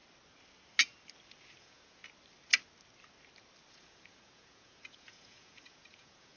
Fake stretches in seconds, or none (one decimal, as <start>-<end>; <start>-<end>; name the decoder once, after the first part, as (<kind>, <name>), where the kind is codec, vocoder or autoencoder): 1.6-2.0 (vocoder, Vocos); 3.7-6.4